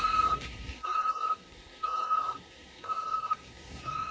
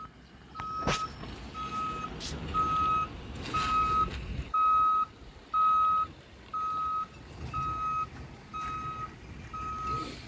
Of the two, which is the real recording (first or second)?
second